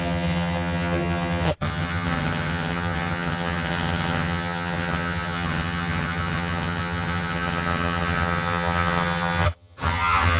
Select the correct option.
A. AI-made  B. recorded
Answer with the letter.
A